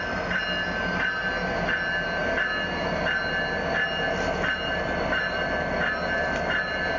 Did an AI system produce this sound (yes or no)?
no